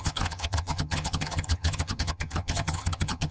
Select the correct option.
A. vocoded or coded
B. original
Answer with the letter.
A